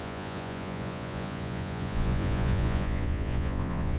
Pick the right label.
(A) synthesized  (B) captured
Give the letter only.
A